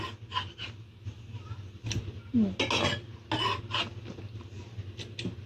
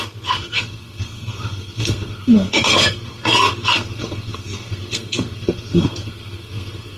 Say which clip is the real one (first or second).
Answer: first